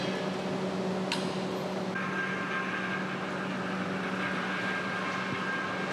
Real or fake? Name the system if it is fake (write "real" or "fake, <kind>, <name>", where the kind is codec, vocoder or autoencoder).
real